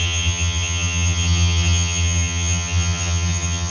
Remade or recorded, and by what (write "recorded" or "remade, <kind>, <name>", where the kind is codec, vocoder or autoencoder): remade, vocoder, HiFi-GAN